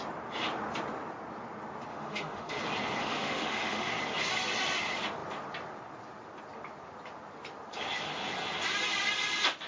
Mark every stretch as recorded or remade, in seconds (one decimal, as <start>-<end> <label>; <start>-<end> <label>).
0.0-1.9 recorded; 1.9-2.6 remade; 2.6-3.0 recorded; 3.0-3.9 remade; 3.9-9.7 recorded